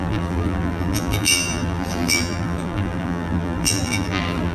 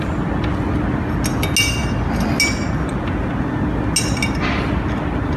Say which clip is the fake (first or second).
first